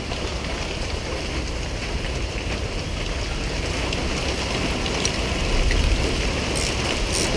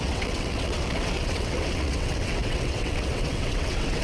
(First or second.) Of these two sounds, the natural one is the first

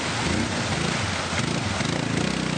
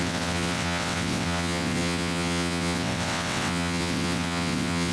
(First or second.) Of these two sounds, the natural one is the first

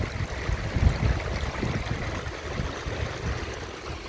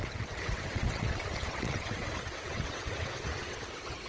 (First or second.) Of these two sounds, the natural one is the first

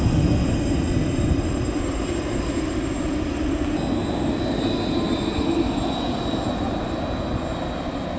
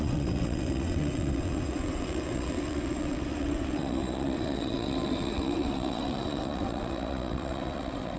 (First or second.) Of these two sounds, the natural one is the first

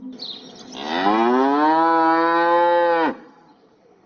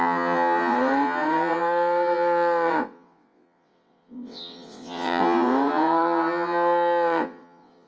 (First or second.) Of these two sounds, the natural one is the first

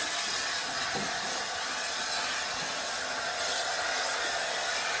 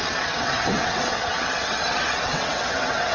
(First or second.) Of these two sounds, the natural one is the first